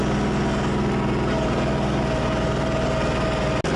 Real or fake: real